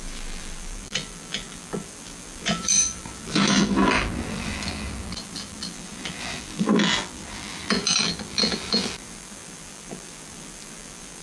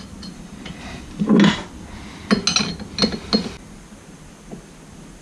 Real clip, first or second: second